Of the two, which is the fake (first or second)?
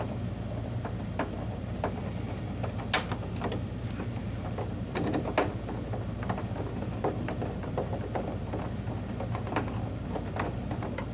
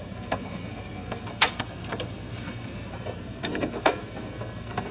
second